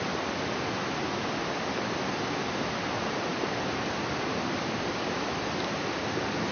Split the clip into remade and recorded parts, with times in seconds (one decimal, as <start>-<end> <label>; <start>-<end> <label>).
0.0-6.5 recorded